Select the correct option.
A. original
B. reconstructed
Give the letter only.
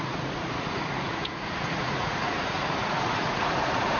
B